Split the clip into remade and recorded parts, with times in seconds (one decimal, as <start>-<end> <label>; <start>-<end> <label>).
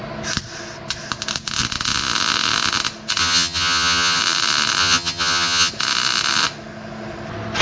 0.0-3.2 recorded; 3.2-4.2 remade; 4.2-4.8 recorded; 4.8-5.7 remade; 5.7-7.6 recorded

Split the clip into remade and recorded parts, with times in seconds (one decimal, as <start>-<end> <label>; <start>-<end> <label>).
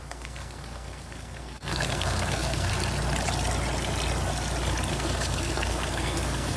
0.0-2.7 remade; 2.7-4.9 recorded; 4.9-6.6 remade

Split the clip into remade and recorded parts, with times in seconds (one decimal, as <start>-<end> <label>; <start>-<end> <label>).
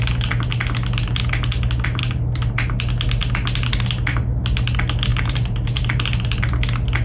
0.0-5.1 recorded; 5.1-6.4 remade; 6.4-7.0 recorded